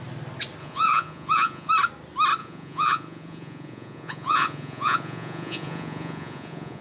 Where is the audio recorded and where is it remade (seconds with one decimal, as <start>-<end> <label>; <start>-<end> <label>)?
0.0-0.6 recorded; 0.6-1.7 remade; 1.7-2.4 recorded; 2.4-6.8 remade